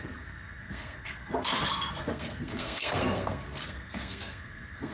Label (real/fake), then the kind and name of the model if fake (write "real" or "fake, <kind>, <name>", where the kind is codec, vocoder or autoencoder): fake, codec, SNAC